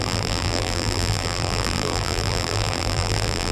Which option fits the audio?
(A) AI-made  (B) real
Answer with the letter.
A